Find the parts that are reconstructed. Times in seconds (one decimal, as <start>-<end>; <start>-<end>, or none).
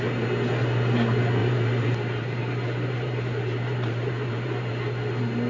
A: 1.4-4.7